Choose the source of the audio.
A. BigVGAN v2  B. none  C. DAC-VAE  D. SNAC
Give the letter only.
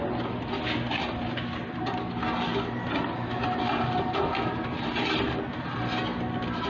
B